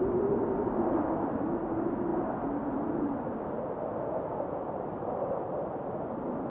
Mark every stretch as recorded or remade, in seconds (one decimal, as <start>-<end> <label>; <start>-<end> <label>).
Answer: 0.0-6.5 recorded